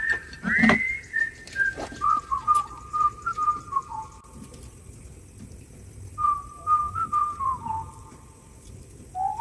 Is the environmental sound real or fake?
real